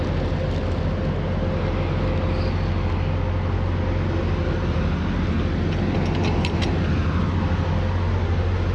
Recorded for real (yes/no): yes